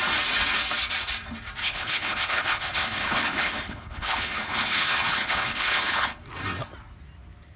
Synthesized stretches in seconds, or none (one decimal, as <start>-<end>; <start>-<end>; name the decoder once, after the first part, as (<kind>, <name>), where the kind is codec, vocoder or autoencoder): 1.6-6.2 (codec, HILCodec)